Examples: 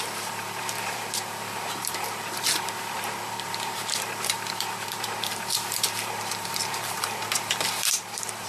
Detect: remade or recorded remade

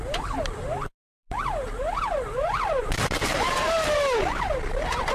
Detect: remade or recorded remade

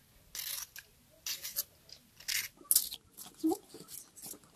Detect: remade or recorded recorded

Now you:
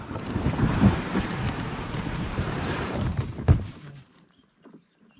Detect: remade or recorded remade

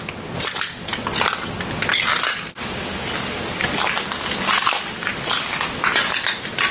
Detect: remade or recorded remade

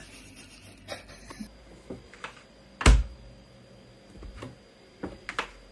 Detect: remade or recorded recorded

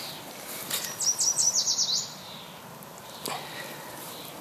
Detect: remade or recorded recorded